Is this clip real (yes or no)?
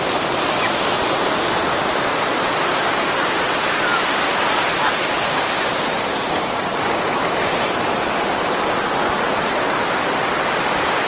no